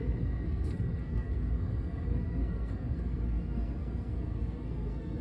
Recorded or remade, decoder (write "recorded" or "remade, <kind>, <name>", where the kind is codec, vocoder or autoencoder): remade, codec, SNAC